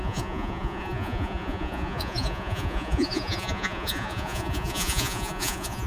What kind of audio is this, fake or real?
fake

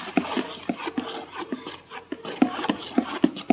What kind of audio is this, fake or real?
real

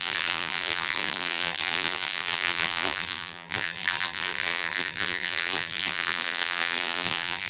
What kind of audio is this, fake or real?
fake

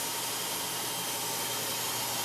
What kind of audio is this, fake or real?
real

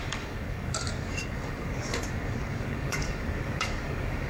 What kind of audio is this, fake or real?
fake